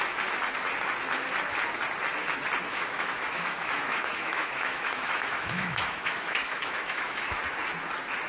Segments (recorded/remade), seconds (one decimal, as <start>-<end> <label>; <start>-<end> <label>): 0.0-2.7 recorded; 2.7-7.4 remade; 7.4-8.3 recorded